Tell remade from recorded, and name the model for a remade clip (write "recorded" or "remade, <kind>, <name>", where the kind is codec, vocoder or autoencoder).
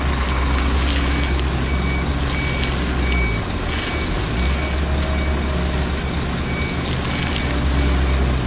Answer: recorded